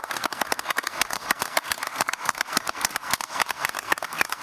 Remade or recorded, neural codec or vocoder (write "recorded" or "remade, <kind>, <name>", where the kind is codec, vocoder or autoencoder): remade, codec, SNAC